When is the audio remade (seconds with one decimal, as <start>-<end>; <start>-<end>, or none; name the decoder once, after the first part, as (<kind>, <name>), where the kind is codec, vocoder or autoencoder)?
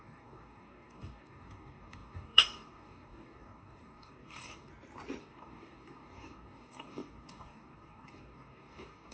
0.0-4.7 (codec, DAC); 5.2-9.1